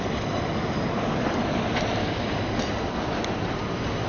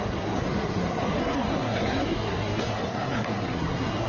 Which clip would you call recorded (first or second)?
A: first